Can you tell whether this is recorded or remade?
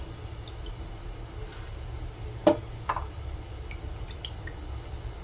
recorded